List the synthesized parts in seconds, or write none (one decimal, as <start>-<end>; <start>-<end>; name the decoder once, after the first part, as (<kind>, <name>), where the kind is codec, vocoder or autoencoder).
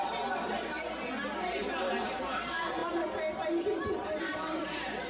none